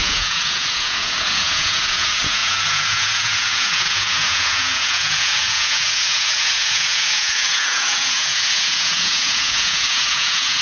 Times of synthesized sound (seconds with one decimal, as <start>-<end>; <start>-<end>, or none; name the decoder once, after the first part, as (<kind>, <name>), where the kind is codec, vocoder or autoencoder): 0.0-10.6 (vocoder, Vocos)